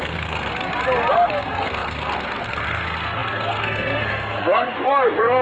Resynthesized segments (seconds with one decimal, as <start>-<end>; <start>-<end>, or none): 0.0-0.5; 1.1-5.4